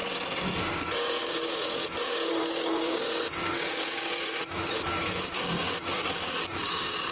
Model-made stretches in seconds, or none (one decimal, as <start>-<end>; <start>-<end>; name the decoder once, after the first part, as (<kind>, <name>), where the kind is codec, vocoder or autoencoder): 1.2-7.1 (codec, DAC)